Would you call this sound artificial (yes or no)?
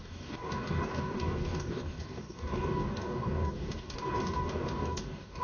yes